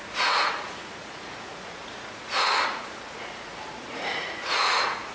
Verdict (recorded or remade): remade